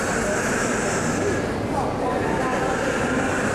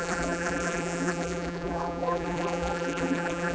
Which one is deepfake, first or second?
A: second